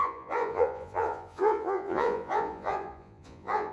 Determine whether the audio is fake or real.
fake